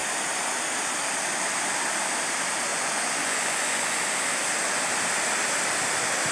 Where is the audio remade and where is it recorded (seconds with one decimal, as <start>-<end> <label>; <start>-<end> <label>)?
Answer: 0.0-2.7 recorded; 2.7-4.0 remade; 4.0-6.3 recorded